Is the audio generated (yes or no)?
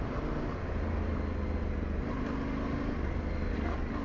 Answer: no